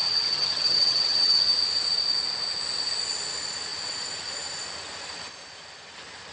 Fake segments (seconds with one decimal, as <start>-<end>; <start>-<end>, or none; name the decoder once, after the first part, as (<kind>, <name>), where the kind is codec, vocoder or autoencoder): 0.0-1.4 (vocoder, HiFi-GAN)